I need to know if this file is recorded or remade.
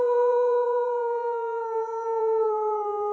remade